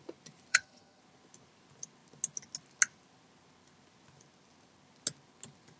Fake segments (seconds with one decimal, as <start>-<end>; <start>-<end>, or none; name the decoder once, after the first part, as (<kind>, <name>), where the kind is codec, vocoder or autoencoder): 0.5-1.0 (vocoder, HiFi-GAN)